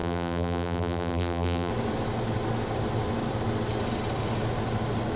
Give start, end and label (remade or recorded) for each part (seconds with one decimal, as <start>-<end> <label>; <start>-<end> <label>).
0.0-1.7 remade; 1.7-5.2 recorded